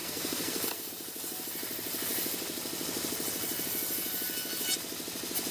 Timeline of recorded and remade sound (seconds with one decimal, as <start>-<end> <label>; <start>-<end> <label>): 0.0-0.9 remade; 0.9-5.5 recorded